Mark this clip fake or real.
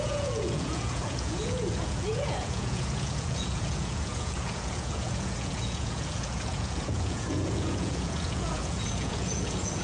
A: fake